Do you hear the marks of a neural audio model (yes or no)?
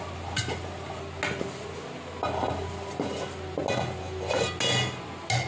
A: no